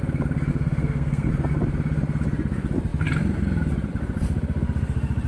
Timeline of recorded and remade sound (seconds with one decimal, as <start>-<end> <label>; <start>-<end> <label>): 0.0-0.5 recorded; 0.5-1.3 remade; 1.3-5.3 recorded